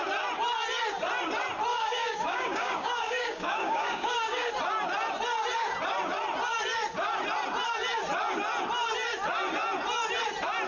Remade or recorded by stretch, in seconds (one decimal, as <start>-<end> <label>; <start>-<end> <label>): 0.0-1.7 recorded; 1.7-4.5 remade; 4.5-10.7 recorded